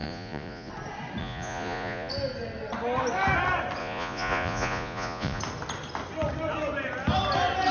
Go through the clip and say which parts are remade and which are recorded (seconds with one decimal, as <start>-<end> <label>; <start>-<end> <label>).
0.0-0.7 remade; 0.7-1.2 recorded; 1.2-2.1 remade; 2.1-3.8 recorded; 3.8-5.4 remade; 5.4-7.7 recorded